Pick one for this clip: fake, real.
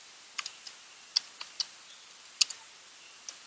real